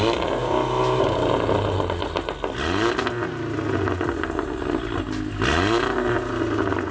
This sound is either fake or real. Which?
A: real